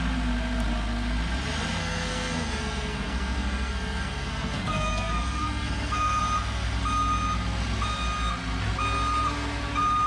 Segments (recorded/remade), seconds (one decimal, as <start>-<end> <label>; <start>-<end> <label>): 0.0-1.8 recorded; 1.8-6.2 remade; 6.2-10.1 recorded